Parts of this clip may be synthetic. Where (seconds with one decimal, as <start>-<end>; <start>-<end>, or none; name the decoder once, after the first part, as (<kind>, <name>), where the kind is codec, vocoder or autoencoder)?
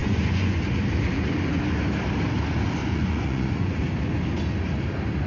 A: 0.0-0.6 (vocoder, Vocos); 2.8-3.8